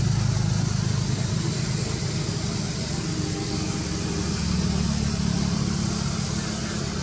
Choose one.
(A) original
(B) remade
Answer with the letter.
A